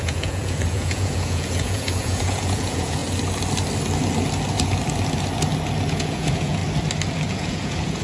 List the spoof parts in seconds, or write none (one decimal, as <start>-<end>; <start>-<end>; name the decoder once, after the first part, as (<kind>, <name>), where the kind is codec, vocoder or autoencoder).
0.0-3.0 (vocoder, Vocos); 5.9-6.6; 7.3-8.0